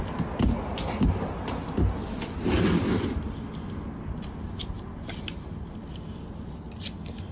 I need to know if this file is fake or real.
real